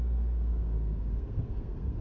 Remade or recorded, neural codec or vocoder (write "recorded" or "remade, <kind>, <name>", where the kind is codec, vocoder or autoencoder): remade, codec, SNAC